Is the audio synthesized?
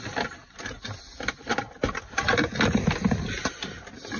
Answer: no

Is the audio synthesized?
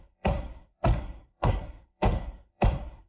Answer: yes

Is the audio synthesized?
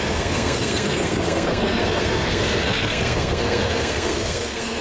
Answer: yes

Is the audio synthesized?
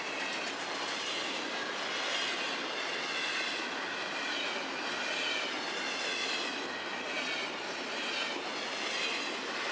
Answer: no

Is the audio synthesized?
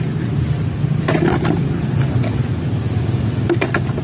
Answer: no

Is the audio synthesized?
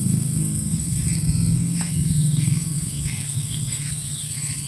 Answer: yes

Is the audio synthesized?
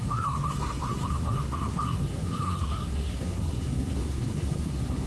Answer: yes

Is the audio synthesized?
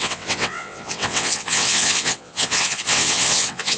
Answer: yes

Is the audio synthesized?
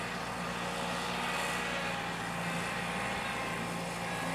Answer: no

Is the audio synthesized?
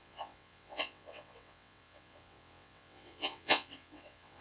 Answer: yes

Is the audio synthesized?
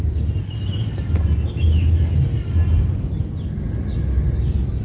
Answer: no